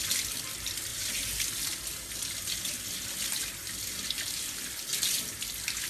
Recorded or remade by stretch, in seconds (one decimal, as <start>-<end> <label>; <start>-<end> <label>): 0.0-5.9 recorded